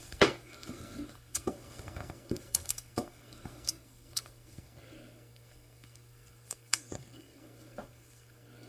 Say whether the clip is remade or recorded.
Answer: remade